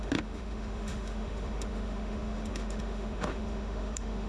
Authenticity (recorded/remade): remade